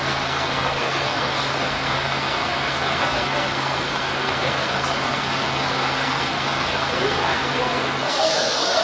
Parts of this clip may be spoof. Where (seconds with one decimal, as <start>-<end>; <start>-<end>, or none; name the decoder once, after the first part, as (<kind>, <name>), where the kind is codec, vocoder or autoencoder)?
0.0-8.8 (codec, SNAC)